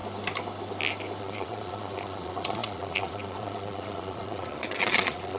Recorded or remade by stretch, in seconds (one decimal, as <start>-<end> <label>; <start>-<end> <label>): 0.0-1.2 recorded; 1.2-5.4 remade